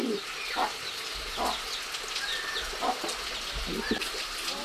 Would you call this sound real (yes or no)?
yes